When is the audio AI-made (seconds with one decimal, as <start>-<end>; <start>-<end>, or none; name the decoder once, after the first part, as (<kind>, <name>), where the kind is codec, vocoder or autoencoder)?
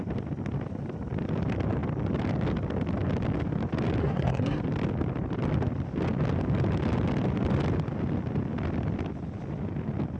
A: 4.0-4.6 (codec, SNAC)